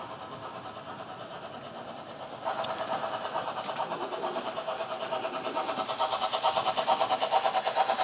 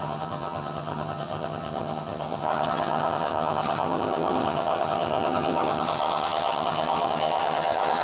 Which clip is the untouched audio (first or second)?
first